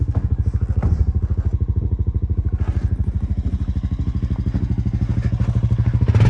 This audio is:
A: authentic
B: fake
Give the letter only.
A